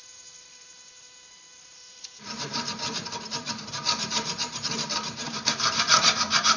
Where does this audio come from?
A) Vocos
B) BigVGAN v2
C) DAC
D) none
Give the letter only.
B